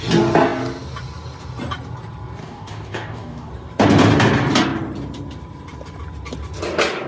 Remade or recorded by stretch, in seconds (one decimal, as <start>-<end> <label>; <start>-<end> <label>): 0.0-2.4 recorded; 2.4-3.5 remade; 3.5-7.1 recorded